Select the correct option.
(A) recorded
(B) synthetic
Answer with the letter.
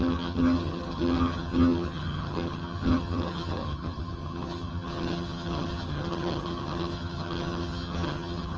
B